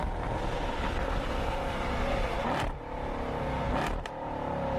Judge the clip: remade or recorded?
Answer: recorded